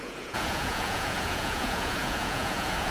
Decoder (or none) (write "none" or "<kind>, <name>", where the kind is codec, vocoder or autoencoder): vocoder, Vocos